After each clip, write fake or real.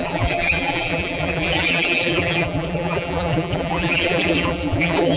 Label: fake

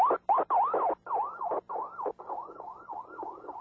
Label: fake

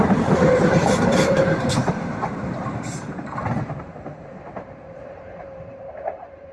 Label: fake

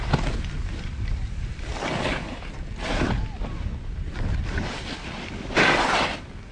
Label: real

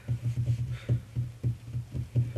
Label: real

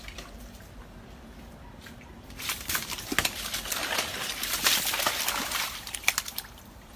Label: fake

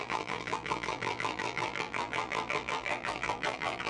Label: fake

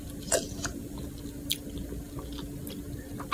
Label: real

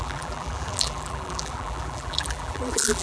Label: fake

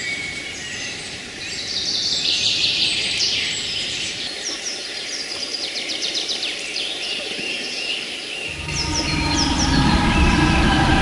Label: fake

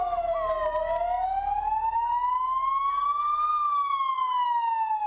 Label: real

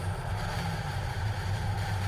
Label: fake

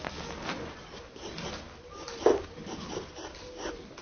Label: real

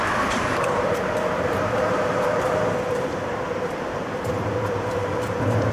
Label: fake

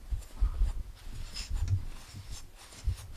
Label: fake